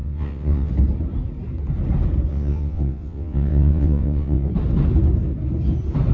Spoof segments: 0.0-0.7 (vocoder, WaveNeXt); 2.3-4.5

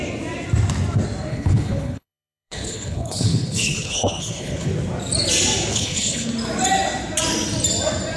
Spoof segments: 1.3-4.7 (codec, HILCodec); 5.7-6.3